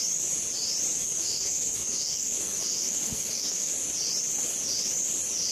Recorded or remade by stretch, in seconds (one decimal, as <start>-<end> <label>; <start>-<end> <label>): 0.0-0.9 recorded; 0.9-3.7 remade; 3.7-5.5 recorded